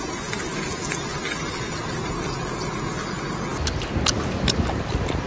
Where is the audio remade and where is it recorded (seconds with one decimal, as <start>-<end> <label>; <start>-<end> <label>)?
0.0-5.3 recorded